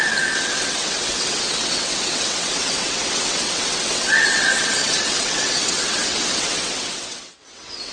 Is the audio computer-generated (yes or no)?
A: yes